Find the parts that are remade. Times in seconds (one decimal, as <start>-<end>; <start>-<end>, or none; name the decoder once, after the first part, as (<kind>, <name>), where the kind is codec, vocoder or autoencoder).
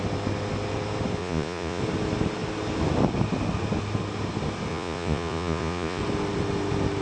1.2-1.8 (vocoder, Vocos); 4.7-6.0